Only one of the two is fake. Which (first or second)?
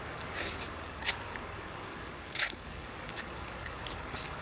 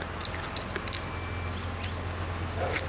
first